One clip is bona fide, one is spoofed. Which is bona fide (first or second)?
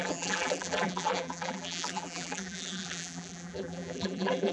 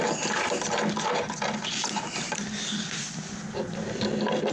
second